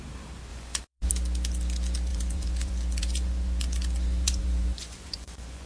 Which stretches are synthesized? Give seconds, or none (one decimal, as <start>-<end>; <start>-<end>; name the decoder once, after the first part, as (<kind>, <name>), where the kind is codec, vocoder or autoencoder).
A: 0.5-1.1 (vocoder, Vocos); 2.1-5.7